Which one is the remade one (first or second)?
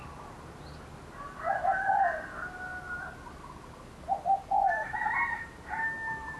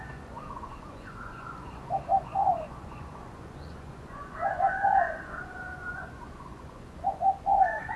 second